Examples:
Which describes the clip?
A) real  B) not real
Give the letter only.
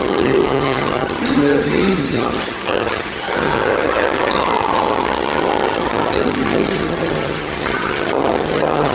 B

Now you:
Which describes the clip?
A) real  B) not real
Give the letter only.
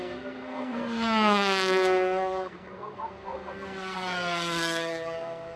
B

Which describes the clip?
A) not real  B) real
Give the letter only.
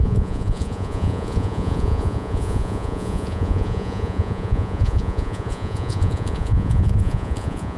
A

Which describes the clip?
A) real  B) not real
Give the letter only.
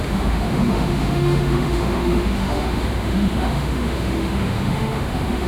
B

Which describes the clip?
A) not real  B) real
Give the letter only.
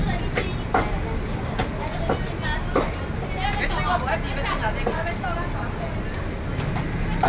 B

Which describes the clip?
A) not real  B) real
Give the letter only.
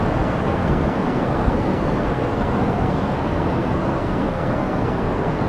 A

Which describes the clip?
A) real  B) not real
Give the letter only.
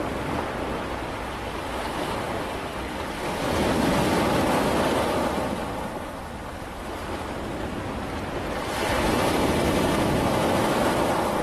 B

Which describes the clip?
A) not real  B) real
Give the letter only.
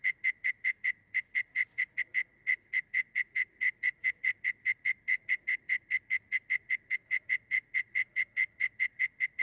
A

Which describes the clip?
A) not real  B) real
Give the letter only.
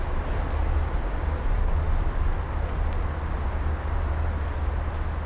B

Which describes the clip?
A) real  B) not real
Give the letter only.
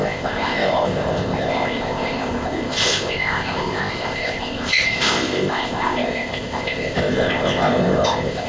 B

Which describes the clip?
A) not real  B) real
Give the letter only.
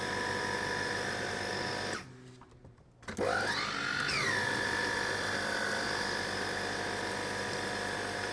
B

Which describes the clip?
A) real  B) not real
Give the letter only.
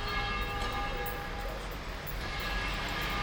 A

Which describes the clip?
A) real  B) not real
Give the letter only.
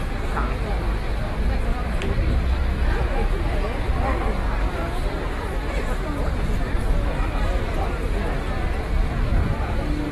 A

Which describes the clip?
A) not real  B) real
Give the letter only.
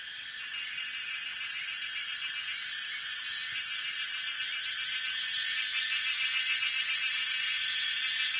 B